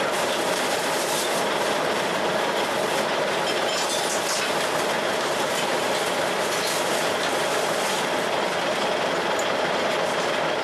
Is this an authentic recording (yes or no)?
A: yes